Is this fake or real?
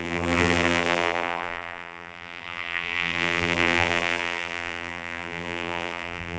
fake